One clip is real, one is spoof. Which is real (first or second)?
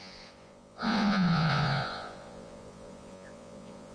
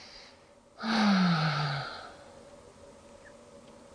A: second